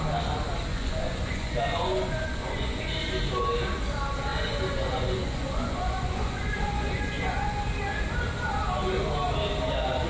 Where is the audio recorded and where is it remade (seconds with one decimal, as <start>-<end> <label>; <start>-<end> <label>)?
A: 0.0-0.7 recorded; 0.7-3.1 remade; 3.1-4.3 recorded; 4.3-7.7 remade; 7.7-10.1 recorded